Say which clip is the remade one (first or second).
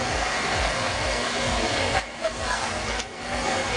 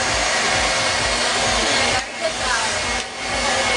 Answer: first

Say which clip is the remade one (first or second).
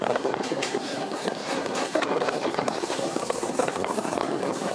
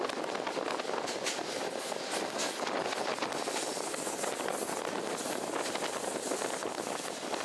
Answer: first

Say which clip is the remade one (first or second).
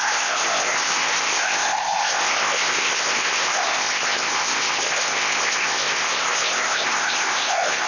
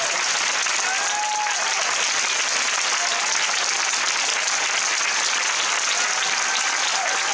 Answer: first